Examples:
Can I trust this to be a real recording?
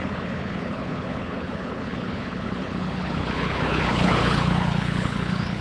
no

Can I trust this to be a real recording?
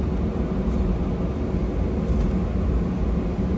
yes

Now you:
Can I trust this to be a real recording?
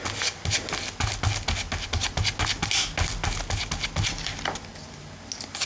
yes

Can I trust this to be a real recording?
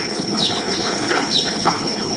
no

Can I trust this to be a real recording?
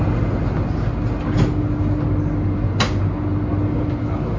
yes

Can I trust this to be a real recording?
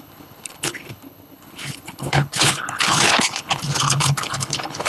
no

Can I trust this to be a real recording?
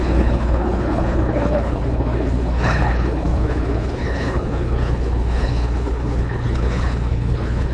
no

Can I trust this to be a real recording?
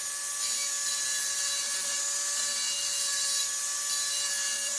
yes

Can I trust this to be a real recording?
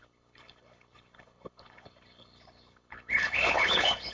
no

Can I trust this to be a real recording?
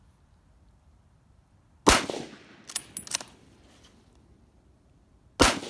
yes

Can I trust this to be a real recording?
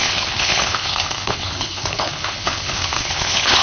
no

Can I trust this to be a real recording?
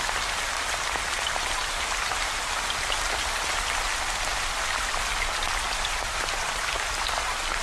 yes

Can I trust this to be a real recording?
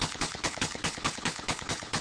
no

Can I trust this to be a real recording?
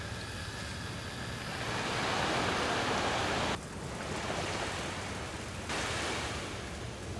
yes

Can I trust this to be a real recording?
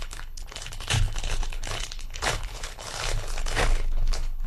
no